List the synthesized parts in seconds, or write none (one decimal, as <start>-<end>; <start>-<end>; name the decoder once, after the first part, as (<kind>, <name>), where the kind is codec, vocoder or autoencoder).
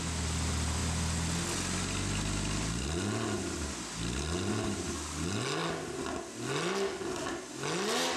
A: none